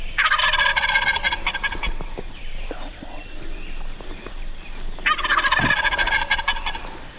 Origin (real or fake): real